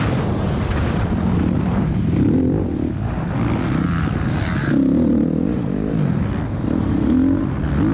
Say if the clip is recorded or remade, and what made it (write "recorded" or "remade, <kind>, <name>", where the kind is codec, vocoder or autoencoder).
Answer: recorded